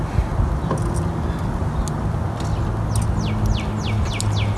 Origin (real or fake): real